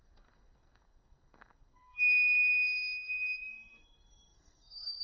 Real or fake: fake